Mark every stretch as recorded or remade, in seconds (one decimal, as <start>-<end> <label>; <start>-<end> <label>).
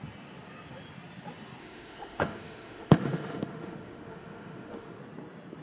0.0-1.6 recorded; 1.6-5.0 remade; 5.0-5.6 recorded